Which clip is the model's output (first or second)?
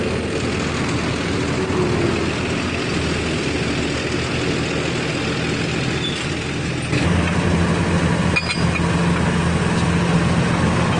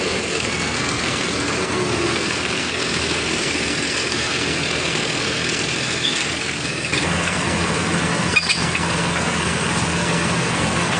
second